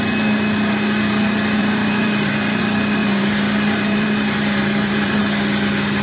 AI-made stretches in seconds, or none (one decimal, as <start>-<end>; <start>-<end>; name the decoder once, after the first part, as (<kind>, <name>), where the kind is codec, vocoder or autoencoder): 1.6-2.6 (vocoder, BigVGAN v2); 3.0-5.2